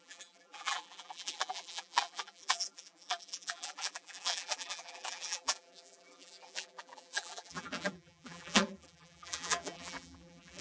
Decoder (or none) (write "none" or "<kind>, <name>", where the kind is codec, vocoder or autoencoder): vocoder, BigVGAN v2